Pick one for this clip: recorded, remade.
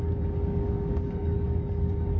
remade